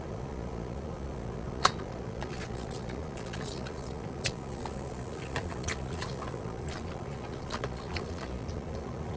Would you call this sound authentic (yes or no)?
no